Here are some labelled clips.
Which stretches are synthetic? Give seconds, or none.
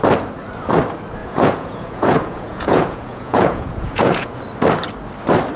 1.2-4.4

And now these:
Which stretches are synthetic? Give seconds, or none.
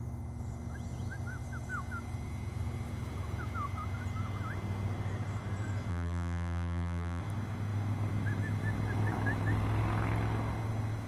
5.9-7.2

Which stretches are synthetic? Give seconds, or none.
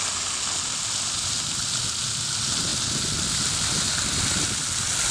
none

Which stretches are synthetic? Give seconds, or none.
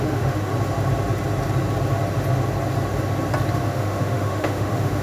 0.0-0.5; 3.5-5.0